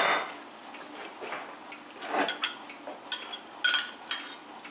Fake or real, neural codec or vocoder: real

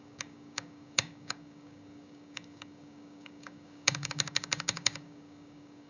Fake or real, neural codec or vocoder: fake, codec, DAC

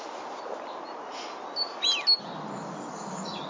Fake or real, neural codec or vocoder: real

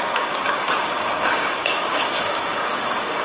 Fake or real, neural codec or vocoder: fake, codec, DAC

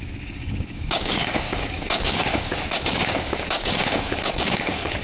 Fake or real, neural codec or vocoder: fake, codec, DAC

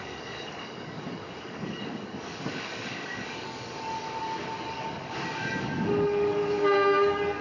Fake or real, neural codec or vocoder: fake, codec, DAC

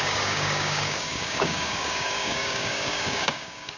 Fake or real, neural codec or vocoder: fake, codec, DAC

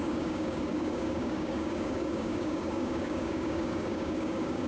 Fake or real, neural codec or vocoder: fake, codec, DAC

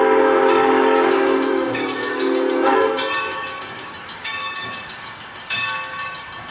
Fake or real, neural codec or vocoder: fake, codec, DAC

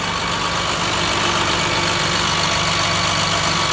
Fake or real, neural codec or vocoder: real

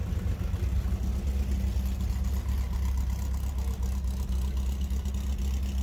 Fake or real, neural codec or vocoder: real